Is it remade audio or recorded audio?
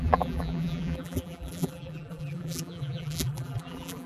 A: remade